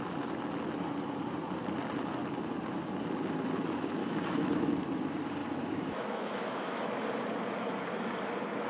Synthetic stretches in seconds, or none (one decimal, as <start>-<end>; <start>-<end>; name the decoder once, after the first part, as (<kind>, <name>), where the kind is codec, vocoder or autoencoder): 4.0-4.7 (autoencoder, DAC-VAE); 5.4-7.0